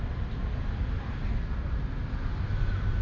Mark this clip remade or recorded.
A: recorded